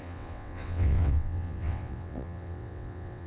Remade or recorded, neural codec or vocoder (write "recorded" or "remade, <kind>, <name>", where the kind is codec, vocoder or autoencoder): remade, vocoder, WaveNeXt